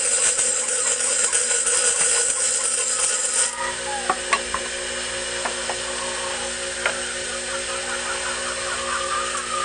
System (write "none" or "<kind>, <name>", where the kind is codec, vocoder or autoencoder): none